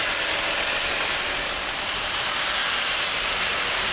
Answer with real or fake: fake